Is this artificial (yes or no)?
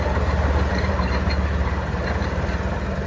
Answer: yes